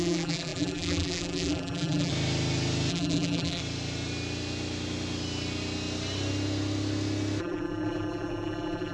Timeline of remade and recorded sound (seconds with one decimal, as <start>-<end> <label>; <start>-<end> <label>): 0.0-2.1 remade; 2.1-2.9 recorded; 2.9-3.6 remade; 3.6-7.4 recorded; 7.4-8.9 remade